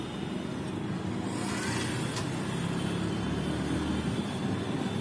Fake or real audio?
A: real